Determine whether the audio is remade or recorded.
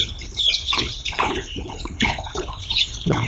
remade